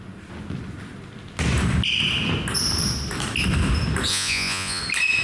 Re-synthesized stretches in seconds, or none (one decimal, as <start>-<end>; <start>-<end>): 4.1-4.8